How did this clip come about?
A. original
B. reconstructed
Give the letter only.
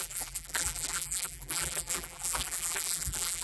B